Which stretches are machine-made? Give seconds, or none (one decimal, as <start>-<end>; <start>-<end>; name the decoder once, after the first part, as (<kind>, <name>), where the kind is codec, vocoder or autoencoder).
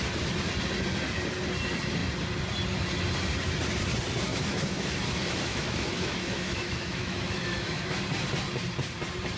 4.3-8.0 (autoencoder, DAC-VAE)